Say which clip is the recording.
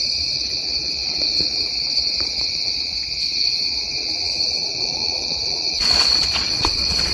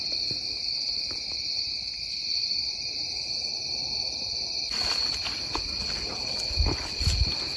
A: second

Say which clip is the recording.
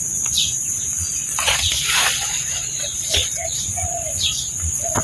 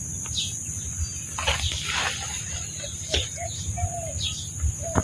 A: second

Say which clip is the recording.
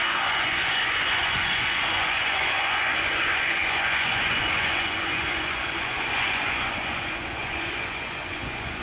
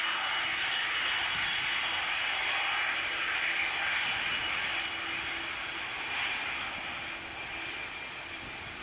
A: second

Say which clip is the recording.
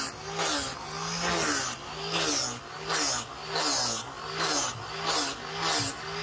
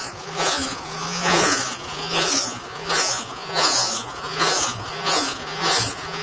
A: first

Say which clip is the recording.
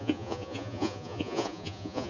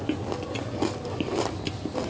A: second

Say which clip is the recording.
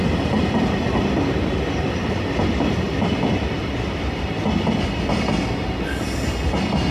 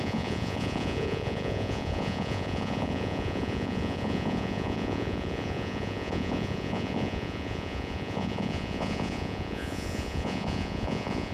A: first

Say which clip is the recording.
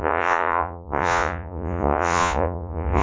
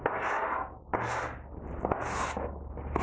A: second